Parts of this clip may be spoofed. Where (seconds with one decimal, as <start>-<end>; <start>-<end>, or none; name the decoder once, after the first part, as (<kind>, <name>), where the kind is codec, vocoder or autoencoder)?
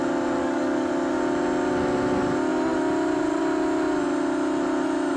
0.4-0.9 (codec, DAC)